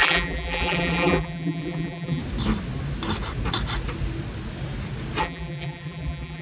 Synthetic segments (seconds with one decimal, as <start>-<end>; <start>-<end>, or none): 0.0-2.2; 5.2-6.4